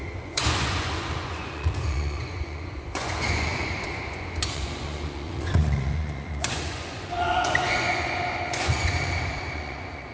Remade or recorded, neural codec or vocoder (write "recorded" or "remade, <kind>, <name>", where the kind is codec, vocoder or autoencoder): remade, vocoder, Vocos